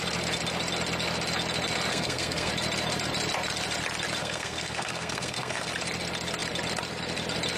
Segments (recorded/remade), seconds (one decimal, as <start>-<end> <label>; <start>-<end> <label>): 0.0-1.9 recorded; 1.9-2.5 remade; 2.5-4.2 recorded; 4.2-5.7 remade; 5.7-7.6 recorded